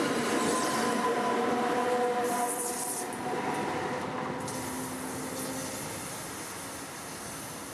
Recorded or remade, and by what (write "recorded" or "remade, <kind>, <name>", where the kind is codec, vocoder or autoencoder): recorded